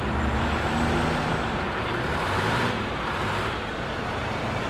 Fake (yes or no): yes